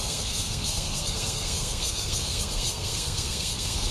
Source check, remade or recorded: remade